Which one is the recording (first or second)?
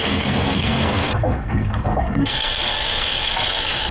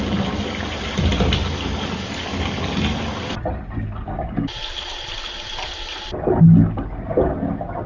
second